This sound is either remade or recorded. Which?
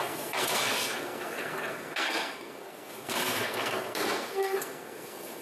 remade